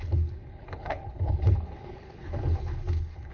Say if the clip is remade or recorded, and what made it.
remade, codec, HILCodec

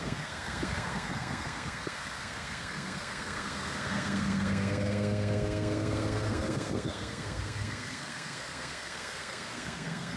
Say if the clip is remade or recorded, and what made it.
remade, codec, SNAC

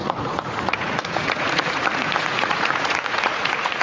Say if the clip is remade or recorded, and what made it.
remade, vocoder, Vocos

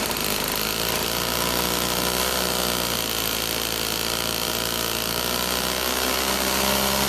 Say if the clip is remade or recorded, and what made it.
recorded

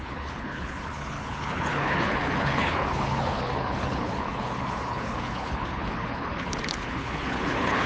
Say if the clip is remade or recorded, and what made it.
remade, codec, HILCodec